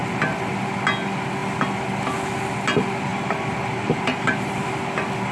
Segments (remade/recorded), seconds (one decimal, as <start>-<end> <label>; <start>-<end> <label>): 0.0-0.5 remade; 0.5-3.1 recorded; 3.1-4.7 remade; 4.7-5.3 recorded